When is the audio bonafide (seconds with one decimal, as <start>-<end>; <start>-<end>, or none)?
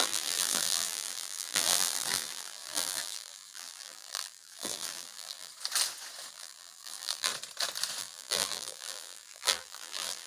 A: 5.5-6.3; 7.3-8.0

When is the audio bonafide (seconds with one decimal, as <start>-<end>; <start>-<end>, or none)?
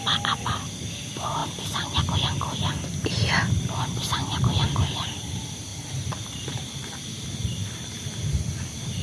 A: 0.0-5.7; 8.4-9.0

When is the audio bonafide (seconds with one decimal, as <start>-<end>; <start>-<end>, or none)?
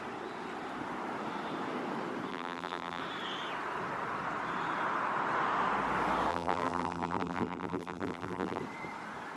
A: 0.0-2.3; 3.0-6.3; 8.6-9.4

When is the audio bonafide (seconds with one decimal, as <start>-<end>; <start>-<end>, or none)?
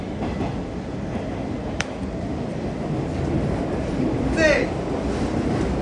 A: 0.0-0.5; 3.6-5.8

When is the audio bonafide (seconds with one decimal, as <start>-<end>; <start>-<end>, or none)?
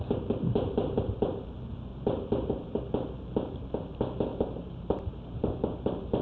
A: 0.0-1.9; 2.8-4.3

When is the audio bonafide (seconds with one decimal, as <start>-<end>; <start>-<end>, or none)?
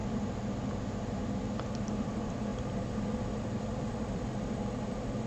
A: 0.0-1.2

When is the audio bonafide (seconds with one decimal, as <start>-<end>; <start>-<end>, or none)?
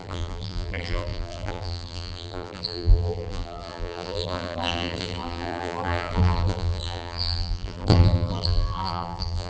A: none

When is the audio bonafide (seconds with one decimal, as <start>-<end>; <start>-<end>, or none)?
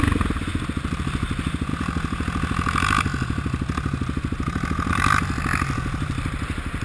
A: 1.7-4.9